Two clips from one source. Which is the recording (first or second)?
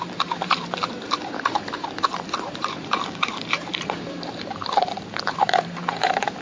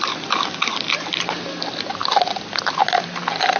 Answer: second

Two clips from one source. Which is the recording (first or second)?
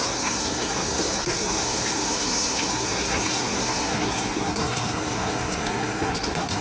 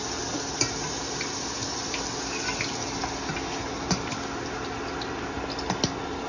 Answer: second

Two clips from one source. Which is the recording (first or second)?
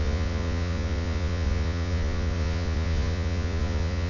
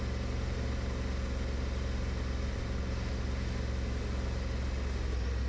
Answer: second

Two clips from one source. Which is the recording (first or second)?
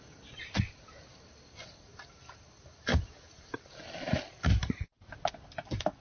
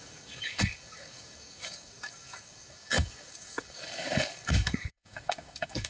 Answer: first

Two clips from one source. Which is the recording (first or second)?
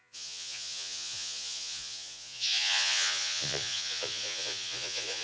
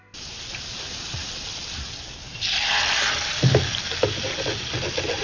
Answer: second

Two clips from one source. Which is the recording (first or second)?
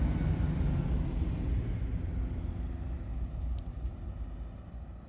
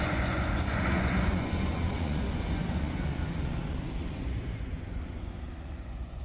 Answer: first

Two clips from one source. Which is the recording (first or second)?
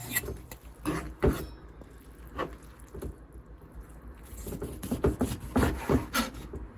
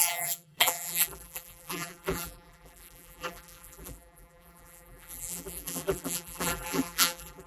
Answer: first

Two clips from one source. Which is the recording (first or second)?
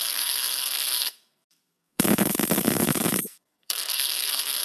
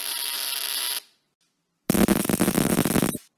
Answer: second